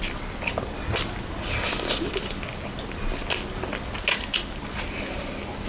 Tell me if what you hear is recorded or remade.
recorded